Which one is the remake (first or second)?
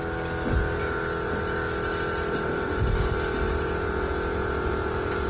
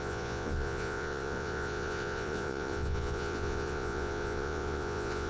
second